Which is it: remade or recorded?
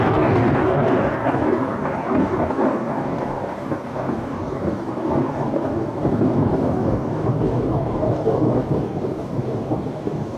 remade